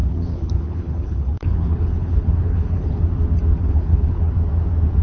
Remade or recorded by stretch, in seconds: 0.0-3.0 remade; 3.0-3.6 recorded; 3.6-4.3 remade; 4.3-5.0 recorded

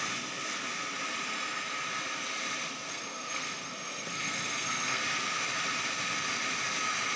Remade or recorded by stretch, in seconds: 0.0-2.9 recorded; 2.9-5.0 remade; 5.0-7.2 recorded

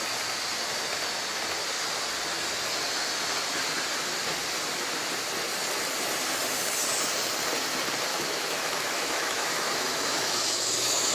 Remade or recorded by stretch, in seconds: 0.0-8.1 recorded; 8.1-11.1 remade

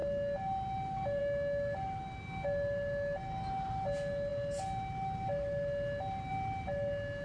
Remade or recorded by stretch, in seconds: 0.0-7.2 recorded